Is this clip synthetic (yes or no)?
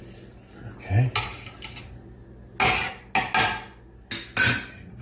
no